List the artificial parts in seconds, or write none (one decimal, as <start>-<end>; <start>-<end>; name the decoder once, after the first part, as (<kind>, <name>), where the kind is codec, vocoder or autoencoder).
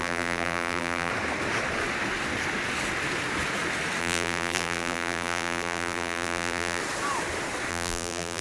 0.0-1.1 (vocoder, BigVGAN v2); 4.0-6.8; 7.7-8.4